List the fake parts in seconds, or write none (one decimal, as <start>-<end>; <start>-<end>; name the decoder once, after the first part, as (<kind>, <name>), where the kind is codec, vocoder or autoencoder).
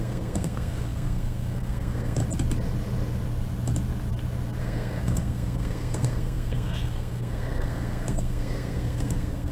0.0-2.2 (codec, SNAC); 4.6-9.5